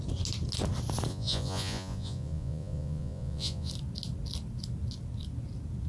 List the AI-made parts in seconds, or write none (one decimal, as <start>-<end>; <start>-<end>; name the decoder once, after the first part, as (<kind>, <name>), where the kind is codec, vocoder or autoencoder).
1.1-3.7 (vocoder, Vocos)